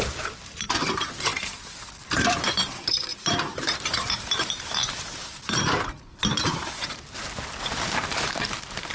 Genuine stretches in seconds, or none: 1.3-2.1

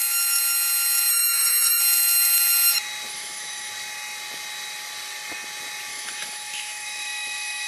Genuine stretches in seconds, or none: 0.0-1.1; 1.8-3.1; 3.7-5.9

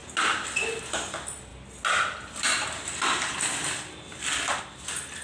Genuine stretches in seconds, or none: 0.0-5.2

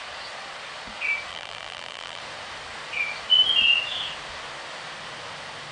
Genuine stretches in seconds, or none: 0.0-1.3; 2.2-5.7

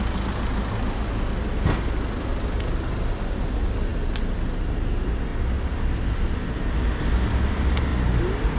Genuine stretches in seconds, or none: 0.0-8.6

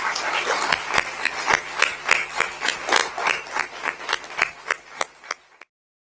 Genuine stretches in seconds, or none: 0.0-3.0; 4.0-6.0

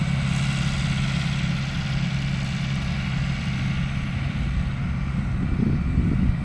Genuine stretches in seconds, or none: 0.0-6.4

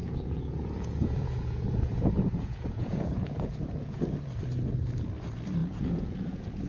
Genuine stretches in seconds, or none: 4.0-5.6